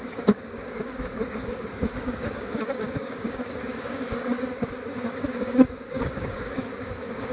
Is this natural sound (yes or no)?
no